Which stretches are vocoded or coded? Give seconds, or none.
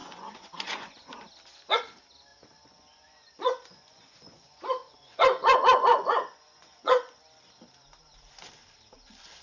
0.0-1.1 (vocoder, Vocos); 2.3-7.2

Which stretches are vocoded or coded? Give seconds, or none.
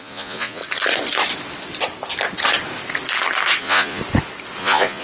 0.0-0.6 (vocoder, Vocos); 3.6-4.0; 4.6-5.0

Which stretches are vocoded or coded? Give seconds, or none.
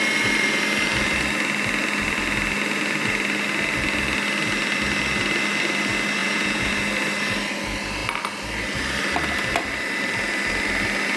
6.2-6.7 (vocoder, Vocos)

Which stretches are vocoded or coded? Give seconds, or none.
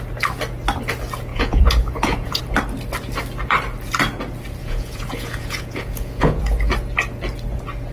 1.3-2.4 (vocoder, Vocos); 4.6-6.4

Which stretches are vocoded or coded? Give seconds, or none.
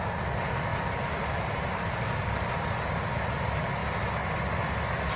none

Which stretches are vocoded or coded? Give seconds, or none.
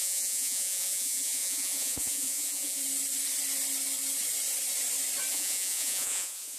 0.0-2.8 (vocoder, Vocos); 5.3-6.6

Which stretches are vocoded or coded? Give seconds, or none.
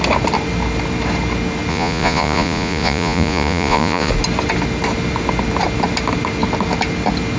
1.7-4.1 (vocoder, Vocos)